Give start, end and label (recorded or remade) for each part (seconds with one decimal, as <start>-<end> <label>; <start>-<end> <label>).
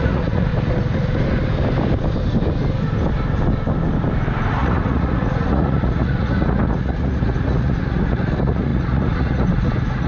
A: 0.0-0.5 remade; 0.5-4.5 recorded; 4.5-10.1 remade